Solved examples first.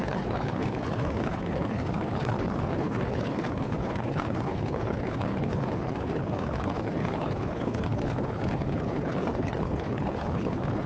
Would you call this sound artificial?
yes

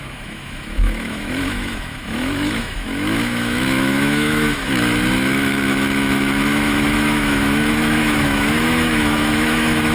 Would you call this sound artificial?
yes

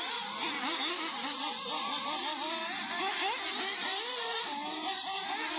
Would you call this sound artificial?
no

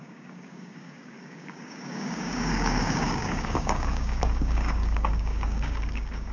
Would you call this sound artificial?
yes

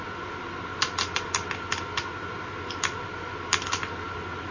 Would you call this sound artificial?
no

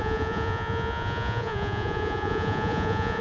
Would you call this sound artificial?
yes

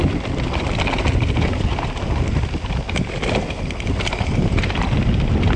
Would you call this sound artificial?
no